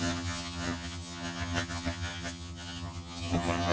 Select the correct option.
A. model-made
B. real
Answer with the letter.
A